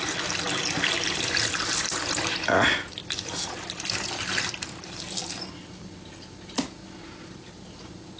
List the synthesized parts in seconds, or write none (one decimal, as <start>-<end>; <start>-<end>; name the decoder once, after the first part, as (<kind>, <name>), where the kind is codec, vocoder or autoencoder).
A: none